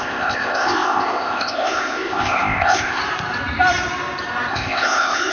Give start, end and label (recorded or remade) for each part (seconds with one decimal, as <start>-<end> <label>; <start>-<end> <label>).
0.0-3.0 remade; 3.0-4.5 recorded; 4.5-5.3 remade

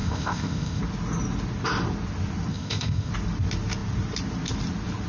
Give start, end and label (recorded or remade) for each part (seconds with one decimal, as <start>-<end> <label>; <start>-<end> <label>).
0.0-0.8 remade; 0.8-2.5 recorded; 2.5-3.1 remade; 3.1-5.1 recorded

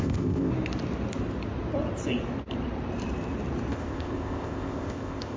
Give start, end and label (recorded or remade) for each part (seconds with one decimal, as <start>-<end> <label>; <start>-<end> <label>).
0.0-0.5 remade; 0.5-3.7 recorded; 3.7-5.4 remade

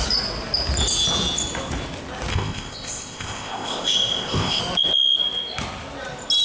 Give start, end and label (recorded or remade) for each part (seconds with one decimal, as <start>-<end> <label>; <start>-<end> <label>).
0.0-2.3 recorded; 2.3-4.6 remade; 4.6-6.4 recorded

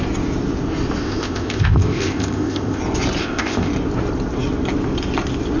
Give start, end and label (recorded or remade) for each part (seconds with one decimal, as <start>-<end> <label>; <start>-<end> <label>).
0.0-1.0 recorded; 1.0-2.8 remade; 2.8-3.2 recorded; 3.2-3.7 remade; 3.7-5.6 recorded

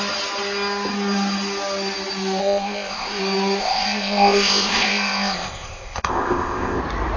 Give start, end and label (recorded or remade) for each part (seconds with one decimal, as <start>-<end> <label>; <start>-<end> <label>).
0.0-2.4 recorded; 2.4-3.2 remade; 3.2-3.6 recorded; 3.6-6.8 remade; 6.8-7.2 recorded